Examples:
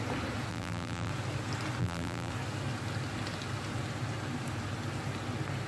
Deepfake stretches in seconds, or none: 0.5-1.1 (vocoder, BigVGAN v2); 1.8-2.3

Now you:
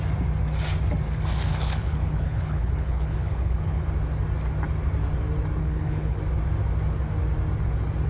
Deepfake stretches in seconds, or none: 1.5-3.8 (codec, HILCodec); 5.6-6.2

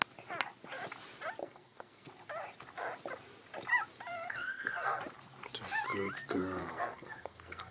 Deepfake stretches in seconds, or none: 1.4-2.1 (codec, SNAC); 4.1-5.0; 6.6-7.7

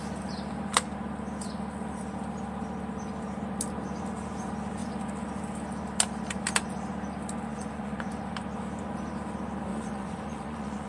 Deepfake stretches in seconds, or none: 7.5-8.1 (vocoder, Vocos); 9.7-10.9

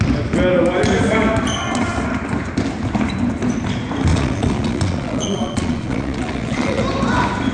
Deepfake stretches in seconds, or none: 4.1-6.8 (vocoder, Vocos)

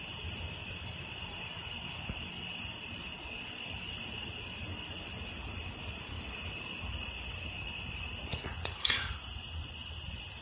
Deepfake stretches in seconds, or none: 8.3-9.2 (vocoder, Vocos)